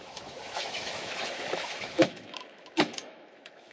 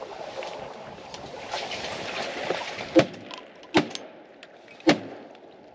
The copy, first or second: first